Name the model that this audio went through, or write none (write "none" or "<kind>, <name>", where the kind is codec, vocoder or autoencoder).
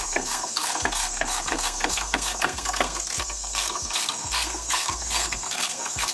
codec, SNAC